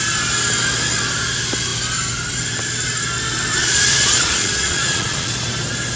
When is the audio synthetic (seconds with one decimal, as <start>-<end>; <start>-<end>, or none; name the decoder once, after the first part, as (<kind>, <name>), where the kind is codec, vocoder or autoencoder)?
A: 3.6-5.3 (vocoder, Vocos)

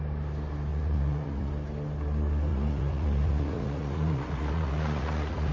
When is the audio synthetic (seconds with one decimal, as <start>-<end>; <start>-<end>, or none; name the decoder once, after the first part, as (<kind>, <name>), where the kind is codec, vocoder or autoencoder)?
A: 0.7-1.5 (vocoder, Vocos); 2.5-5.5

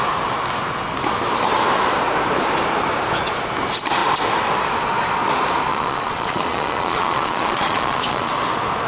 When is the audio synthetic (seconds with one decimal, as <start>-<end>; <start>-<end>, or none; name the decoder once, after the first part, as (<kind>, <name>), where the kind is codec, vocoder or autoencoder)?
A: 5.7-8.3 (vocoder, Vocos)